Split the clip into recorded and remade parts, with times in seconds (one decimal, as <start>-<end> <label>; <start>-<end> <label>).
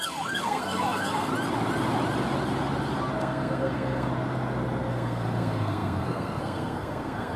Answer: 0.0-1.3 remade; 1.3-3.2 recorded; 3.2-4.1 remade; 4.1-4.9 recorded; 4.9-7.4 remade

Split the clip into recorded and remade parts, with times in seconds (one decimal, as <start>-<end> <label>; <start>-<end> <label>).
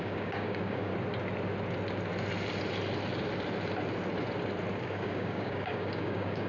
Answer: 0.0-0.9 remade; 0.9-4.8 recorded; 4.8-6.5 remade